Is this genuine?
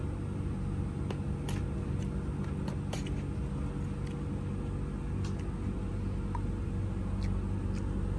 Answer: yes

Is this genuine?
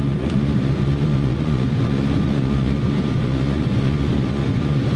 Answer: no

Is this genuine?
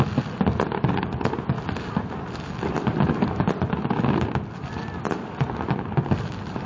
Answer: yes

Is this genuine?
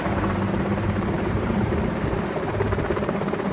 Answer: no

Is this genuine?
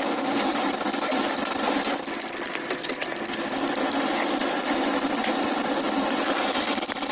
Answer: yes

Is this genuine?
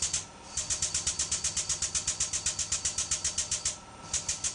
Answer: yes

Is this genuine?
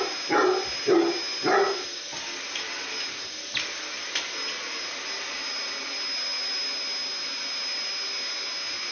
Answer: yes